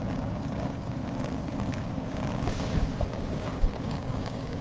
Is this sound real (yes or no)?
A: no